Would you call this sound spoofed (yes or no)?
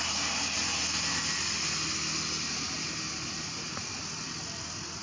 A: no